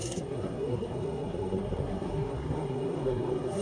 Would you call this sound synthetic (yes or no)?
yes